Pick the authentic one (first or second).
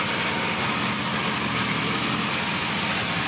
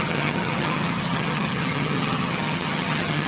first